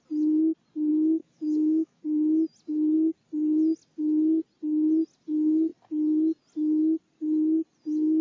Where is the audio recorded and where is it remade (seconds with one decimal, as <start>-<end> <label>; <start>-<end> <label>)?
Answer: 0.0-0.9 recorded; 0.9-2.0 remade; 2.0-8.2 recorded